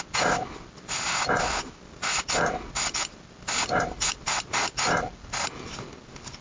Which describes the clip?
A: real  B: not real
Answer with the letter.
A